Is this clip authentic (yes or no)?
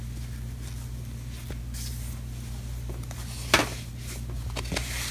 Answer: yes